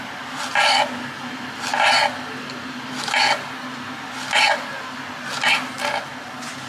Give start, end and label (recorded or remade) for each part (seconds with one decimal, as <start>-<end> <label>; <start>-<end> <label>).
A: 0.0-6.7 recorded